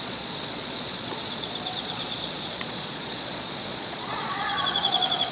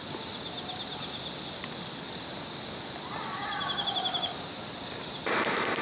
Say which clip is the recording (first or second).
second